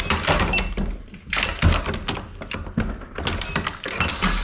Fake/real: real